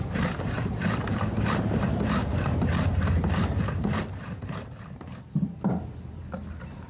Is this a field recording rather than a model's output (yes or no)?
yes